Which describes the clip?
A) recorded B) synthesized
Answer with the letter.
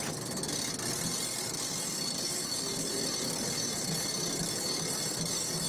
A